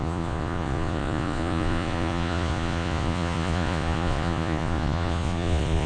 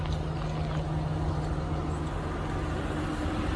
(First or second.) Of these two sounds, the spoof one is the first